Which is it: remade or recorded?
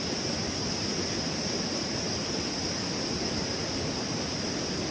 recorded